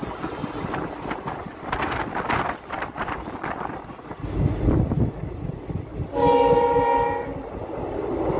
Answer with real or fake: real